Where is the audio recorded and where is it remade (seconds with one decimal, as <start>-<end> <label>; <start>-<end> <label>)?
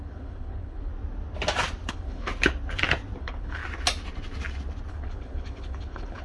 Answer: 0.0-0.9 remade; 0.9-1.9 recorded; 1.9-2.3 remade; 2.3-3.2 recorded; 3.2-3.6 remade; 3.6-4.9 recorded; 4.9-6.2 remade